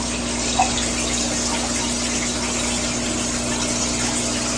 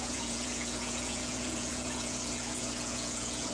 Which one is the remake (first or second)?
second